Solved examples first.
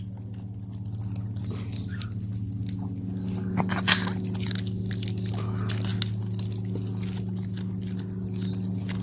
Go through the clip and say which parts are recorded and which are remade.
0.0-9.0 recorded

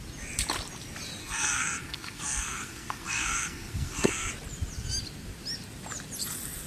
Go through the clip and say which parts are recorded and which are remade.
0.0-1.2 recorded; 1.2-4.3 remade; 4.3-6.7 recorded

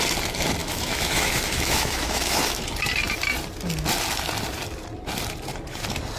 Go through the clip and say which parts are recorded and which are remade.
0.0-0.6 recorded; 0.6-2.6 remade; 2.6-6.2 recorded

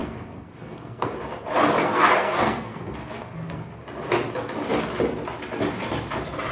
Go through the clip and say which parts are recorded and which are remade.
0.0-1.1 remade; 1.1-1.8 recorded; 1.8-3.8 remade; 3.8-6.5 recorded

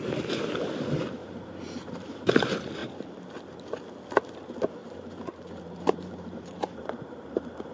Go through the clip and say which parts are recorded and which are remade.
0.0-1.2 recorded; 1.2-2.3 remade; 2.3-4.8 recorded; 4.8-7.7 remade

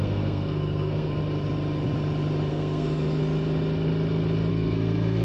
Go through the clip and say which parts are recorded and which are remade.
0.0-1.2 remade; 1.2-2.5 recorded; 2.5-3.2 remade; 3.2-4.5 recorded; 4.5-5.2 remade

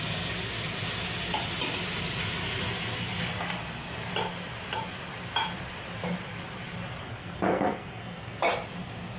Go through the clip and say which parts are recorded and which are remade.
0.0-7.0 recorded; 7.0-8.4 remade; 8.4-9.2 recorded